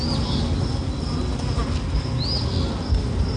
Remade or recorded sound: recorded